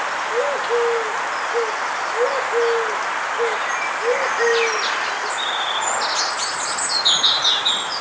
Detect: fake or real real